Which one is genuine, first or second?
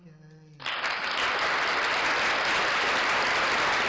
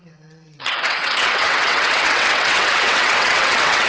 first